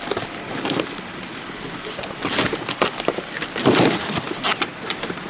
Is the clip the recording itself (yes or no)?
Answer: yes